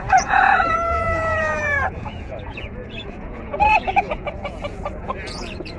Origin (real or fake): fake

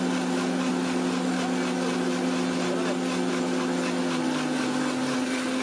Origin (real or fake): real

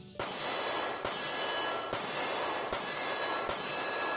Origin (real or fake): real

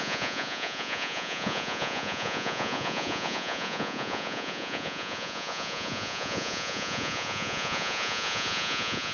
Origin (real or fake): fake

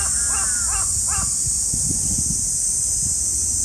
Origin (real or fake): real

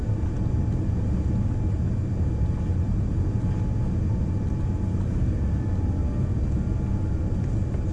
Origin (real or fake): real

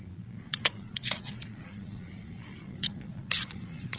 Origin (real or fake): fake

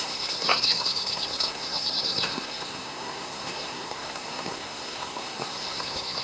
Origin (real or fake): fake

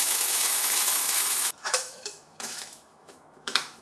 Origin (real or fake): fake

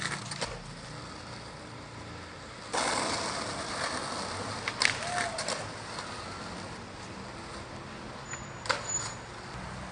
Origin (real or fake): real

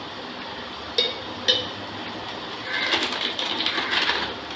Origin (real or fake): real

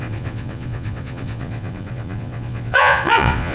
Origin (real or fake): fake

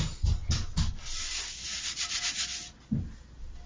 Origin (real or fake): real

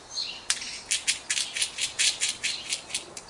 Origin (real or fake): real